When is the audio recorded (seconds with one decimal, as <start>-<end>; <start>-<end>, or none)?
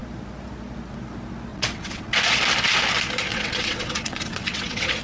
0.0-1.5; 2.2-3.3